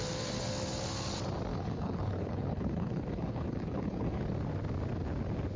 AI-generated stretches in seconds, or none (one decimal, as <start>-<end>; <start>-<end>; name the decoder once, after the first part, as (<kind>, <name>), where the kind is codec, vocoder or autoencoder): 1.5-4.2 (codec, HILCodec)